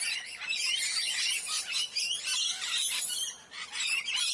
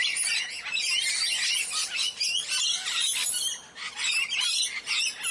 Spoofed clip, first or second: first